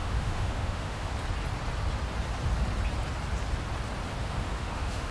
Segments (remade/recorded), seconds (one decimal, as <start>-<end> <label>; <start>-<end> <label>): 0.0-1.1 remade; 1.1-4.2 recorded; 4.2-5.1 remade